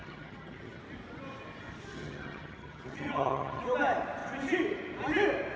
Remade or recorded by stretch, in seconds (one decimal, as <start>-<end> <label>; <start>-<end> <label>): 0.0-0.8 remade; 0.8-1.9 recorded; 1.9-3.6 remade; 3.6-5.6 recorded